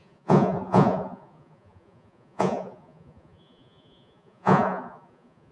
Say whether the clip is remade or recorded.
remade